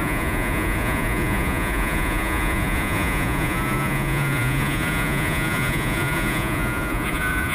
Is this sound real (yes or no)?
no